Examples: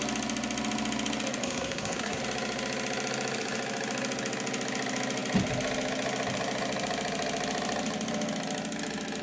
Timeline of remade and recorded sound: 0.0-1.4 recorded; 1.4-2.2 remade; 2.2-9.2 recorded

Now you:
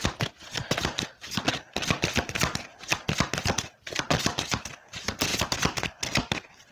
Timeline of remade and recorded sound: 0.0-6.7 recorded

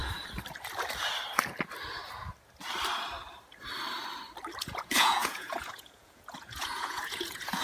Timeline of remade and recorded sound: 0.0-4.6 recorded; 4.6-7.6 remade

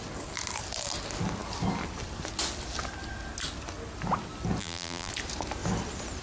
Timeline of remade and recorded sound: 0.0-4.6 recorded; 4.6-5.1 remade; 5.1-6.2 recorded

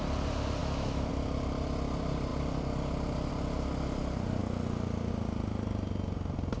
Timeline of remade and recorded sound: 0.0-0.6 recorded; 0.6-1.1 remade; 1.1-6.6 recorded

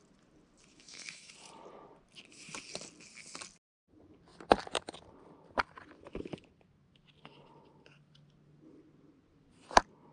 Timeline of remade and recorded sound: 0.0-0.7 recorded; 0.7-1.3 remade; 1.3-10.1 recorded